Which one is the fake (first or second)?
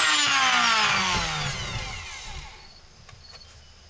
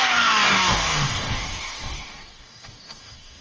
second